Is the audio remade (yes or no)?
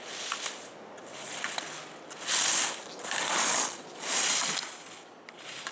no